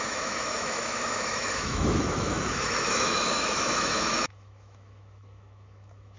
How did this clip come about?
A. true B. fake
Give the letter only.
B